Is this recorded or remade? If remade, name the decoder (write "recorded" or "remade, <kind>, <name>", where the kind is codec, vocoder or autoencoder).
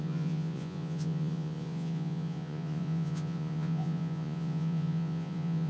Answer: remade, vocoder, Vocos